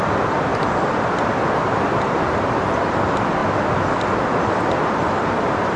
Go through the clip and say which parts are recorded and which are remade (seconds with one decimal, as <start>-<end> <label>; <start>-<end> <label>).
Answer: 0.0-3.4 remade; 3.4-5.3 recorded; 5.3-5.8 remade